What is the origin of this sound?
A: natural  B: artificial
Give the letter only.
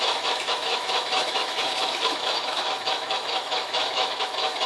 B